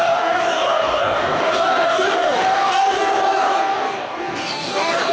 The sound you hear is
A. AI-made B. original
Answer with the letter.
A